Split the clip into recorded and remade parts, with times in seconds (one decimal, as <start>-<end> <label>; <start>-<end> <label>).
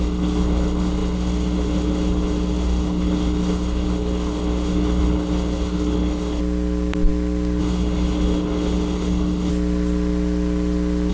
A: 0.0-6.4 remade; 6.4-7.6 recorded; 7.6-9.5 remade; 9.5-11.1 recorded